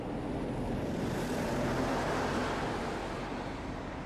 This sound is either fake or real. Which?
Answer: real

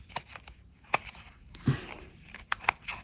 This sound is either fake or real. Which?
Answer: fake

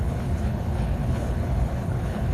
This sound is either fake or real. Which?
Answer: fake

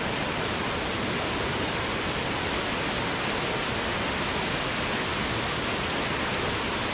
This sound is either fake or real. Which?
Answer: real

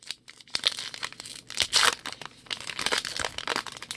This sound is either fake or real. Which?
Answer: real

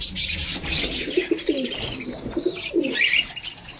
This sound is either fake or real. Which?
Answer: fake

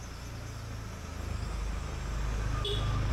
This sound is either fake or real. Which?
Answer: real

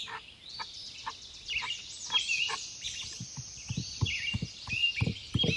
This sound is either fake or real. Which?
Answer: real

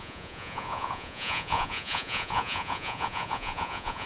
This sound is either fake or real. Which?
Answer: fake